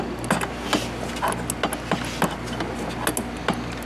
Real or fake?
real